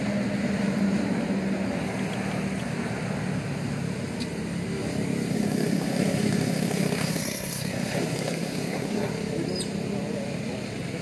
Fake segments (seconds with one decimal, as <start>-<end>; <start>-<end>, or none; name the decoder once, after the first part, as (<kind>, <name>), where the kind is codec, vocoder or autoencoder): 5.3-9.1 (codec, SNAC)

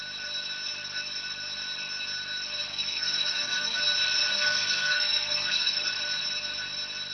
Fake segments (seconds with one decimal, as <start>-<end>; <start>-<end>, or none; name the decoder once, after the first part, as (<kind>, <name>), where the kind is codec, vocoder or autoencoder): 2.7-3.8 (codec, SNAC); 4.3-5.9

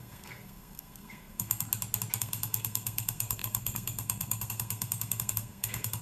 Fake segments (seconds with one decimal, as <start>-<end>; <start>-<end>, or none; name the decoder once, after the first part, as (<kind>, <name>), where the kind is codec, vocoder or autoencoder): 0.0-1.7 (codec, SNAC); 2.2-6.0

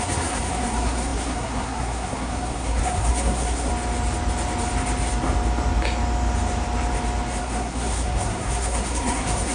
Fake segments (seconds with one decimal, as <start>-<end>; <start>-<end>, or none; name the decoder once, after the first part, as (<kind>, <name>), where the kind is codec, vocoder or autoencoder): 0.0-3.7 (codec, SNAC); 7.4-9.5

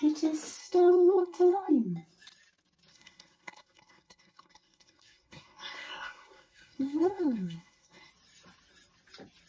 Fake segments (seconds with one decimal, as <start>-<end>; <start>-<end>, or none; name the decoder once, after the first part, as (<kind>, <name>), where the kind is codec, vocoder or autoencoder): 0.6-1.7 (codec, SNAC); 2.9-8.1

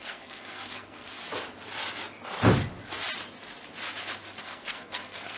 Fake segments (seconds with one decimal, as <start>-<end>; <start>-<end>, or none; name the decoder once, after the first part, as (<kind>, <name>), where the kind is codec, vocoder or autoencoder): 0.0-1.2 (codec, SNAC); 4.4-5.4